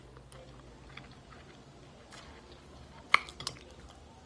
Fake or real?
real